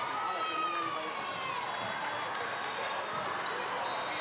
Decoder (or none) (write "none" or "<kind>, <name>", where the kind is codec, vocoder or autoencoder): none